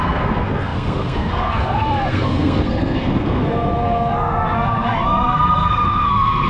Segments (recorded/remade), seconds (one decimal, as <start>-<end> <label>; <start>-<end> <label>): 0.0-6.5 remade